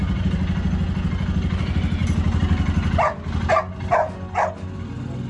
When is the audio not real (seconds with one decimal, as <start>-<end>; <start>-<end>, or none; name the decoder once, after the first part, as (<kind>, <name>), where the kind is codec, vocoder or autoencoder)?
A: none